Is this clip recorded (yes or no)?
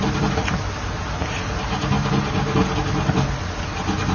yes